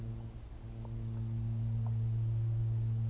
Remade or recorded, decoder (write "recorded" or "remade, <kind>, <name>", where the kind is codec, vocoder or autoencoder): recorded